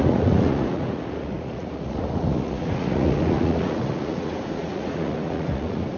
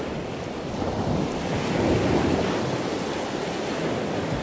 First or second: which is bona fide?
second